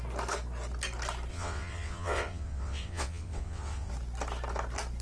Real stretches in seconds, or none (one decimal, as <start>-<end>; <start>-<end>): 0.0-1.3; 3.9-5.0